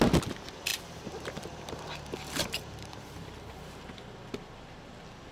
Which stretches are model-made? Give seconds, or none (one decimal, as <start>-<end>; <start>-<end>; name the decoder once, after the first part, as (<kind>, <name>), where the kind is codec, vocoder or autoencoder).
0.7-3.9 (vocoder, BigVGAN v2)